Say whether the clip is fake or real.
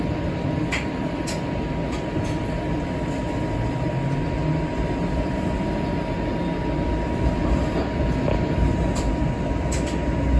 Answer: real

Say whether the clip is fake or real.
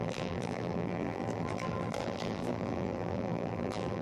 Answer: fake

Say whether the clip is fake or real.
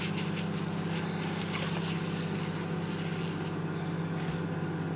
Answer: real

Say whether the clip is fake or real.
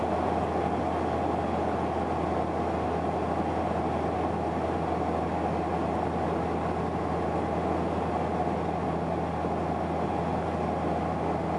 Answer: real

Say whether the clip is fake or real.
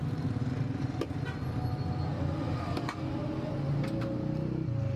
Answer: real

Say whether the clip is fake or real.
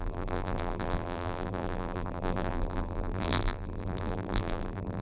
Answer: fake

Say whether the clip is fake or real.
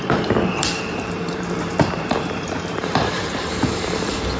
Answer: fake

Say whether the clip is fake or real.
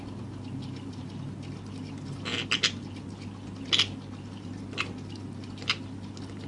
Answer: real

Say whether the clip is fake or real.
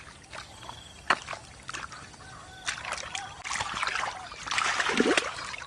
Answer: real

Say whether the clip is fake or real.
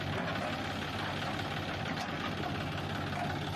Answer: real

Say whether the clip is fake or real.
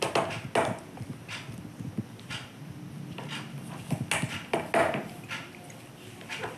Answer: real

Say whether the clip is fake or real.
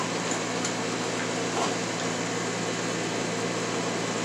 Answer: real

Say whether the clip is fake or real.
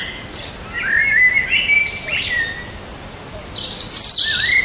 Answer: real